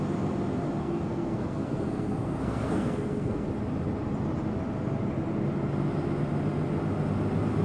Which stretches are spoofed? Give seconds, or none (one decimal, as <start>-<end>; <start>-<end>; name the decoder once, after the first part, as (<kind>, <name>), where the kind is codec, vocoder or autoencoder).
0.8-3.5 (codec, SNAC)